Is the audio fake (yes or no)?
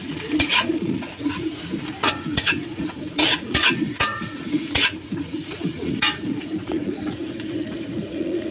yes